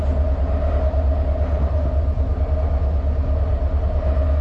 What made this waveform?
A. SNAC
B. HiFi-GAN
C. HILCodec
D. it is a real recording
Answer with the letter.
D